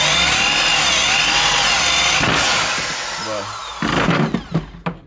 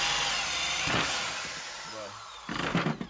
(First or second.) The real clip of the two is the first